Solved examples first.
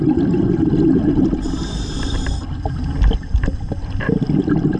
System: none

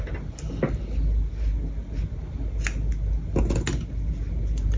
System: none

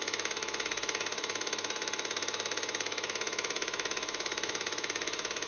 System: autoencoder, DAC-VAE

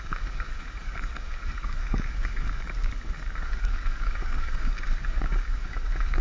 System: codec, DAC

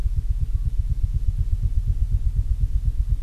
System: none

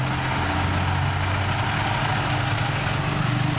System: none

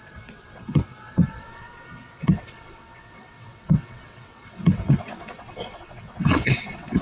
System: vocoder, WaveNeXt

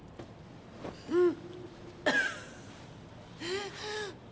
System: none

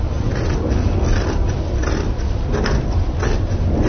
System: none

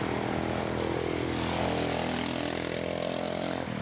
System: none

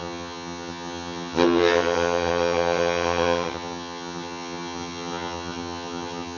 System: vocoder, HiFi-GAN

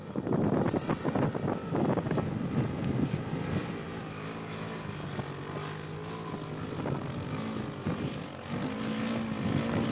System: none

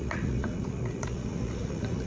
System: vocoder, Vocos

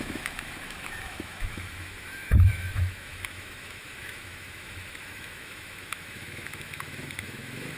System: autoencoder, DAC-VAE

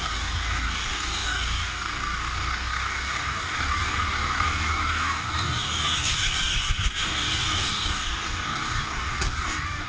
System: codec, DAC